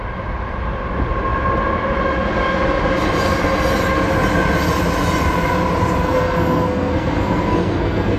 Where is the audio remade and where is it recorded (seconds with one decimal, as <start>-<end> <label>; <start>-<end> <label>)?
0.0-6.0 recorded; 6.0-8.2 remade